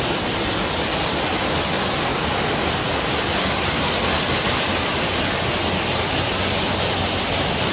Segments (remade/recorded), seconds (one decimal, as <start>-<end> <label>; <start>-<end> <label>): 0.0-7.7 recorded